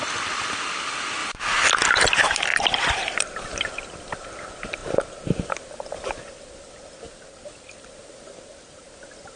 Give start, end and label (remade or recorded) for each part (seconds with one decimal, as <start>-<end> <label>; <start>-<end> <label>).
0.0-2.5 recorded; 2.5-4.3 remade; 4.3-9.4 recorded